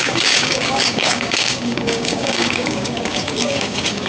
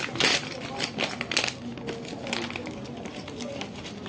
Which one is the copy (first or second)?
first